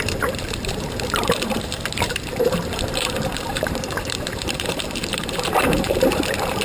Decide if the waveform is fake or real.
fake